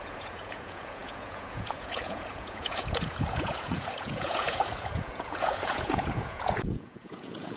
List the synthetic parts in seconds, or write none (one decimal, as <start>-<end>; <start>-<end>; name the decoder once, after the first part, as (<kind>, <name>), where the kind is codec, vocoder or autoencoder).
0.0-7.6 (vocoder, Vocos)